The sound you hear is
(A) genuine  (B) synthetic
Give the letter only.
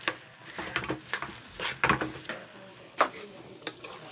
A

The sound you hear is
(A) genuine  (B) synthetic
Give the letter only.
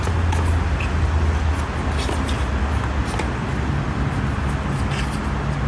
A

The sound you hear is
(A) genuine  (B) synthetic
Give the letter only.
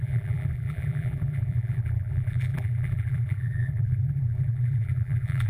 B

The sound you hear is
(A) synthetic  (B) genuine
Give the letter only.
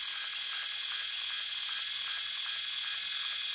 B